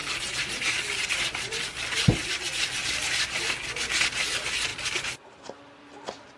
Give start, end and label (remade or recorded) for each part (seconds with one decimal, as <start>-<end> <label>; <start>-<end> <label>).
0.0-3.4 remade; 3.4-4.7 recorded; 4.7-5.9 remade; 5.9-6.4 recorded